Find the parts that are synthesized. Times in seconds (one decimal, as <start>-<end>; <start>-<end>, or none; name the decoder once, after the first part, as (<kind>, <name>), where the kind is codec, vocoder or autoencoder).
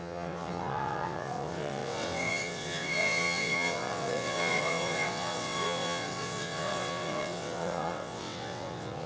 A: 0.0-9.1 (vocoder, WaveNeXt)